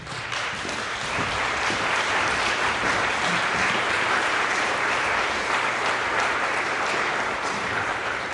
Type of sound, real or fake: fake